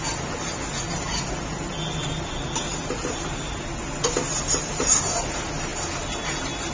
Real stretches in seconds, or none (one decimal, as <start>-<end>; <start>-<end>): 0.0-6.7

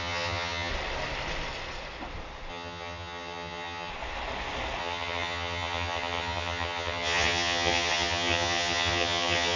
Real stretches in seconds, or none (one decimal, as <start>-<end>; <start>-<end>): 0.7-2.5; 3.9-4.8

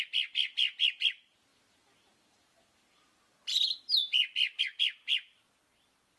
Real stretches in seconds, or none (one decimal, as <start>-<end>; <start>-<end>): 0.0-6.2

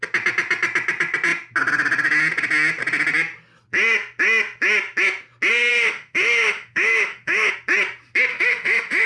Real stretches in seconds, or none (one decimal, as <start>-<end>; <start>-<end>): 0.0-5.7; 7.5-8.3